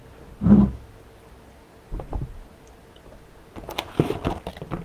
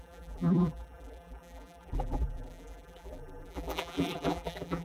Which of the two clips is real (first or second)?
first